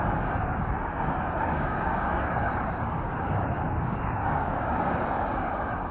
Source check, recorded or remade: remade